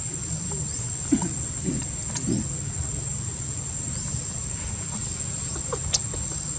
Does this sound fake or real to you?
real